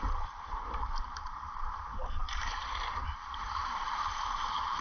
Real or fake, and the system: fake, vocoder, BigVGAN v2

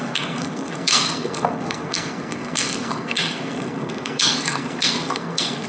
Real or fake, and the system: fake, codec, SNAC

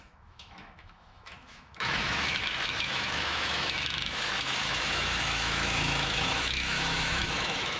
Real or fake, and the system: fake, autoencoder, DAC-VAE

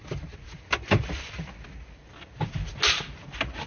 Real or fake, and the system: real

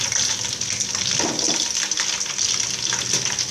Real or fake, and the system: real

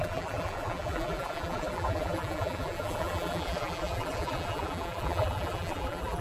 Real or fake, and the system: fake, vocoder, BigVGAN v2